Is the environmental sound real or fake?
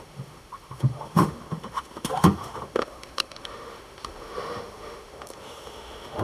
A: fake